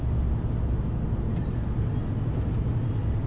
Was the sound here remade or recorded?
recorded